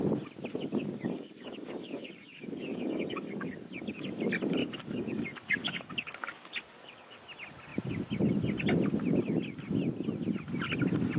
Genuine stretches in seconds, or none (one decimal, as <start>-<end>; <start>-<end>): 0.0-0.6; 4.1-4.6; 7.2-11.2